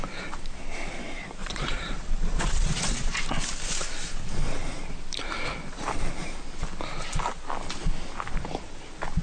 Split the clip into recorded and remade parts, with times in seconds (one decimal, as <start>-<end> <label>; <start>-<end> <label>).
0.0-1.4 recorded; 1.4-3.2 remade; 3.2-9.2 recorded